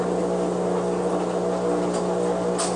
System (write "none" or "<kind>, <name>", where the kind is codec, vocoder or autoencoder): none